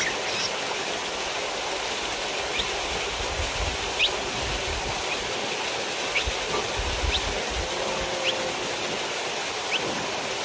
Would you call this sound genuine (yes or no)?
yes